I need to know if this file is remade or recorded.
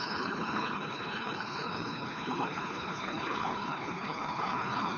remade